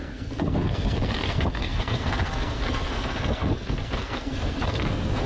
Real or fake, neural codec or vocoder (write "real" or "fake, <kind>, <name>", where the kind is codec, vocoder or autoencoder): fake, codec, SNAC